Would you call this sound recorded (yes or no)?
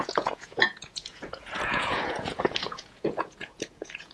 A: no